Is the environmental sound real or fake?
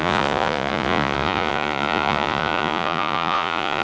fake